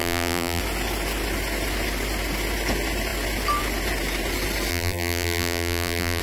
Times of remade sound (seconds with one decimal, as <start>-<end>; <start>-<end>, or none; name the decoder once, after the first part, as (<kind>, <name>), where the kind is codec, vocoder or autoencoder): 0.0-0.6 (vocoder, BigVGAN v2); 4.7-6.2